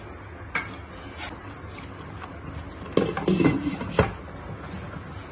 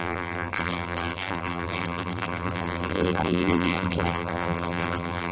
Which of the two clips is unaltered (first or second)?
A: first